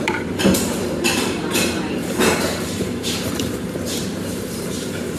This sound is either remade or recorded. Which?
remade